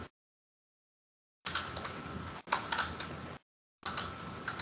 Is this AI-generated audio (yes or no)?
no